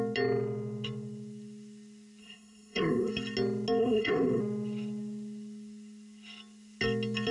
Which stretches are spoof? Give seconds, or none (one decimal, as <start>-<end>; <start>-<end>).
2.2-3.1; 3.8-4.4